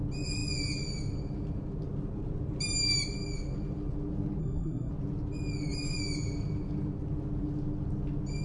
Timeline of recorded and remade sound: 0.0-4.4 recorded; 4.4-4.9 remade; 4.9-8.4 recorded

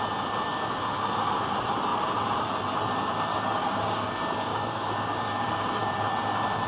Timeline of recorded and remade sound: 0.0-3.3 recorded; 3.3-4.1 remade; 4.1-4.5 recorded; 4.5-5.9 remade; 5.9-6.7 recorded

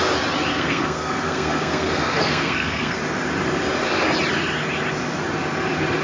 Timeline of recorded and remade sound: 0.0-0.5 recorded; 0.5-3.0 remade; 3.0-6.0 recorded